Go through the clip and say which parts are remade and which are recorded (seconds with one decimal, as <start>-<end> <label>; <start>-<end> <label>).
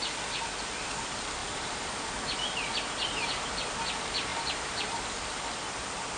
0.0-1.4 recorded; 1.4-2.9 remade; 2.9-4.3 recorded; 4.3-5.4 remade; 5.4-6.2 recorded